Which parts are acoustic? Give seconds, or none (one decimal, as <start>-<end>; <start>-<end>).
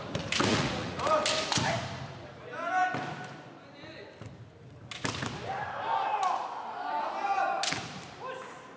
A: 0.0-0.5; 1.1-8.8